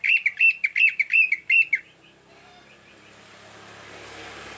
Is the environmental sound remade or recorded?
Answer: remade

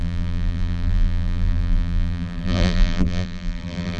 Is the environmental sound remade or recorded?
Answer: remade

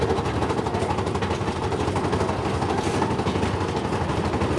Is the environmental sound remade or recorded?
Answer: recorded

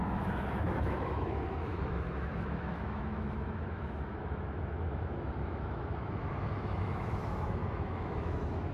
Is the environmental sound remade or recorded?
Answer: remade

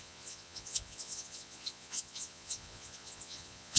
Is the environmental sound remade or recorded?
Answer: remade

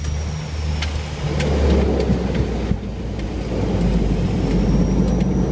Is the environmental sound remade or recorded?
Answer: recorded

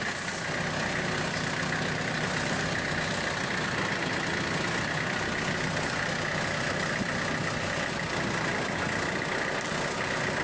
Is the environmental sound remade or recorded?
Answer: recorded